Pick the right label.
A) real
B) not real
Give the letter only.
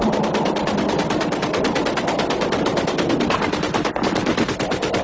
A